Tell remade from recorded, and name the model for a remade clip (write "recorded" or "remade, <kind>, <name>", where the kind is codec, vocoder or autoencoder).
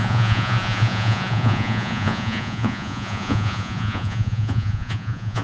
remade, vocoder, Vocos